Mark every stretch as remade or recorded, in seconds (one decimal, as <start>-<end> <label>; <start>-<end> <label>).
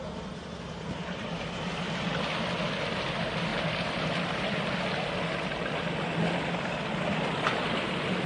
0.0-3.5 recorded; 3.5-4.6 remade; 4.6-8.3 recorded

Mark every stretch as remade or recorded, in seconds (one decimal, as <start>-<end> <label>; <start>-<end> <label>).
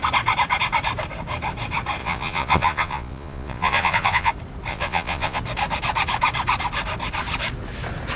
0.0-2.0 recorded; 2.0-4.3 remade; 4.3-4.7 recorded; 4.7-5.4 remade; 5.4-8.2 recorded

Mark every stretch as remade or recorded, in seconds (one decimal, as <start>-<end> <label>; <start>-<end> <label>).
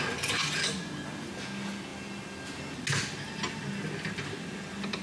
0.0-5.0 recorded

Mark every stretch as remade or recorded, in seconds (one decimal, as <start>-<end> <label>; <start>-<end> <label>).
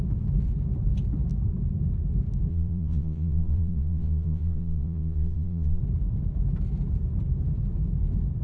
0.0-2.5 recorded; 2.5-5.8 remade; 5.8-8.4 recorded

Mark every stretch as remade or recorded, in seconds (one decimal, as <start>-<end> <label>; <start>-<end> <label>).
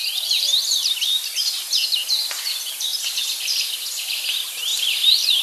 0.0-0.8 remade; 0.8-2.9 recorded; 2.9-3.7 remade; 3.7-4.7 recorded; 4.7-5.4 remade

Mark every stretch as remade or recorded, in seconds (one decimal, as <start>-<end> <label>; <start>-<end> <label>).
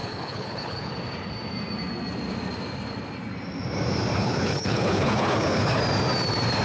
0.0-0.9 remade; 0.9-4.2 recorded; 4.2-5.8 remade; 5.8-6.6 recorded